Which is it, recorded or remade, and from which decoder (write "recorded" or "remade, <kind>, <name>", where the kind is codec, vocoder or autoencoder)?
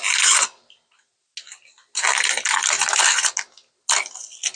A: recorded